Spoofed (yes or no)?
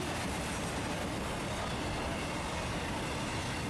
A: no